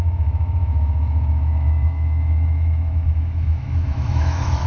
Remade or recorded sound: remade